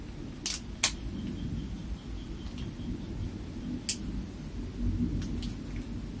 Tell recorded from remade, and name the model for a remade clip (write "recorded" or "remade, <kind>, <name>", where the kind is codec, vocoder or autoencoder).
recorded